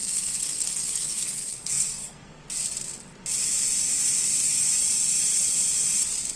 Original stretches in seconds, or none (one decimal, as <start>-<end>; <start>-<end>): 2.4-6.4